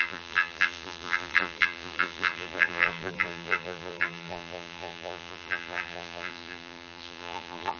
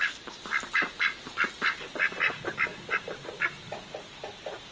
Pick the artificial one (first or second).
first